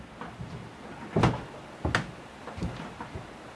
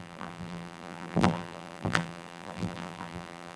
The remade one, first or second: second